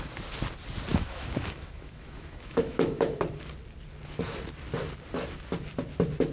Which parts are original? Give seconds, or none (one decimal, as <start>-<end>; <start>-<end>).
0.0-0.9; 3.2-6.3